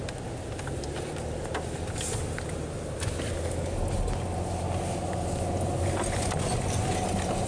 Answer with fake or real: real